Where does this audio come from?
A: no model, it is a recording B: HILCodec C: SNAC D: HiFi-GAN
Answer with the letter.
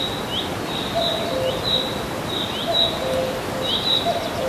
A